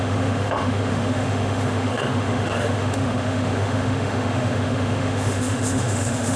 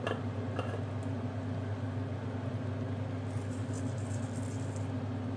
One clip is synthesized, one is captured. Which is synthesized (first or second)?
first